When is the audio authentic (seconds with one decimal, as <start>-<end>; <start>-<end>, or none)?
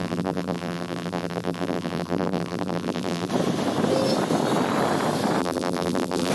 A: 3.3-5.4